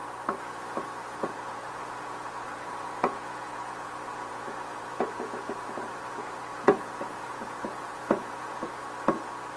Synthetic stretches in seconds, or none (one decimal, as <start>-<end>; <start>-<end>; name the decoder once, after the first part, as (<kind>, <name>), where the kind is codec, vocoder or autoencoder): 1.2-8.8 (vocoder, Vocos)